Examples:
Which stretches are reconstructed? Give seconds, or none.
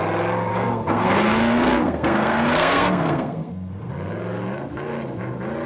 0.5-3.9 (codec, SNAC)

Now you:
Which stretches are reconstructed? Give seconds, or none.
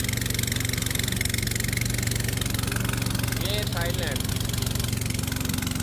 none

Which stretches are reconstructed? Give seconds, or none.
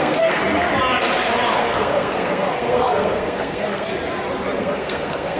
0.0-0.4 (codec, SNAC); 1.6-3.9; 4.6-5.4